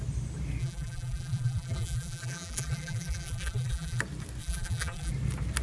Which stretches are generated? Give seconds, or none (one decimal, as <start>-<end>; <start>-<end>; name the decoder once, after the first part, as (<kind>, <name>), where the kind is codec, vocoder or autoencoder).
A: 0.6-4.0 (vocoder, BigVGAN v2); 4.4-5.1